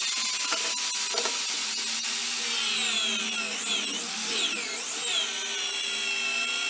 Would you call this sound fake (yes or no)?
no